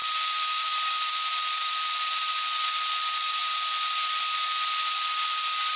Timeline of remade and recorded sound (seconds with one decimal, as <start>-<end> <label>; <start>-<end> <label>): 0.0-2.3 remade; 2.3-5.8 recorded